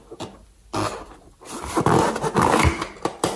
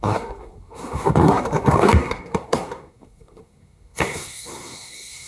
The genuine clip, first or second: first